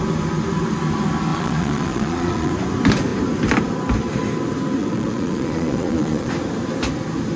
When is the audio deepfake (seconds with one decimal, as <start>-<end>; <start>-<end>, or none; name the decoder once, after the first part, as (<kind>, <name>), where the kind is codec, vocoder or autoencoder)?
1.3-2.5 (vocoder, Vocos); 4.8-6.3